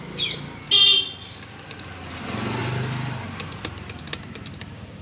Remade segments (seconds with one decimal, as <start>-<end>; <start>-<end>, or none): none